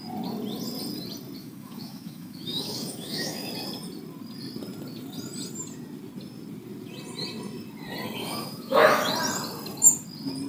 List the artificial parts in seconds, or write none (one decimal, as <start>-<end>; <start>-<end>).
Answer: 1.4-3.5; 8.2-9.1